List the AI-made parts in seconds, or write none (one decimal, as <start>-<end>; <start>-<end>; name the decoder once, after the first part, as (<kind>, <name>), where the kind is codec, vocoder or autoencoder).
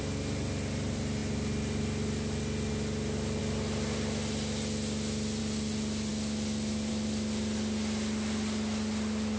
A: none